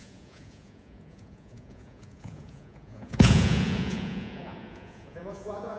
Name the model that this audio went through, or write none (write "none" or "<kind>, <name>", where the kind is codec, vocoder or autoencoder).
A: vocoder, Vocos